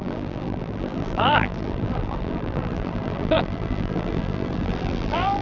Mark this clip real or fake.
fake